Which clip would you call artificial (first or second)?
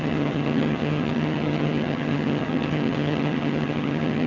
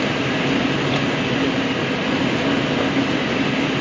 first